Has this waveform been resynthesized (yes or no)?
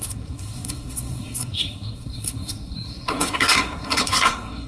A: yes